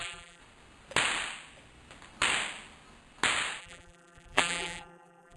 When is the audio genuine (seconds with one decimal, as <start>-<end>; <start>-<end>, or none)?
0.4-3.6